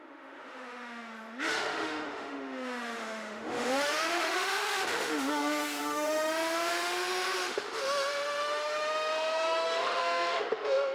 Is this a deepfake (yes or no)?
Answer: yes